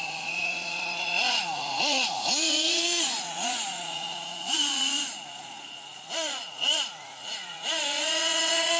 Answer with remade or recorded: remade